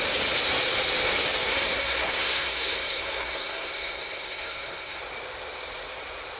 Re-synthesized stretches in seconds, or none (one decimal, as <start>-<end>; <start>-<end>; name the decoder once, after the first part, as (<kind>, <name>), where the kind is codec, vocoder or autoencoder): 1.5-5.0 (codec, SNAC)